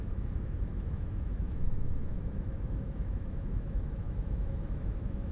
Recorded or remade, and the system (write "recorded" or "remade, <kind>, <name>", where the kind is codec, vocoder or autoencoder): remade, autoencoder, DAC-VAE